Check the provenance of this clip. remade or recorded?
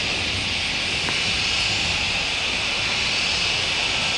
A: recorded